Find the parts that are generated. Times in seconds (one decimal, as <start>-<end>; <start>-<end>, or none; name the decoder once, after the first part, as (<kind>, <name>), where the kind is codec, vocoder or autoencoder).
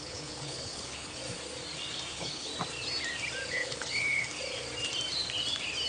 0.0-1.2 (codec, HILCodec); 2.1-2.5; 3.5-4.3